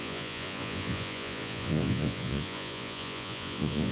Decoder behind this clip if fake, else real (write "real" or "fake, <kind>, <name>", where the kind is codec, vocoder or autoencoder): fake, vocoder, Vocos